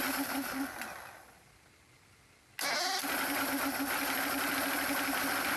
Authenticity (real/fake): real